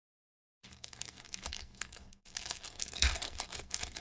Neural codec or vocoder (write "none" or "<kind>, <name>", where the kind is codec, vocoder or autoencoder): codec, SNAC